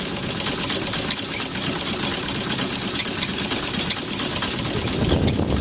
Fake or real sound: real